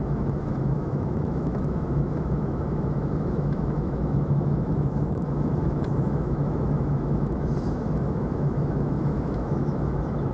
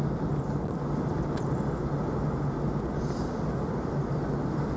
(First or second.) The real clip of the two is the second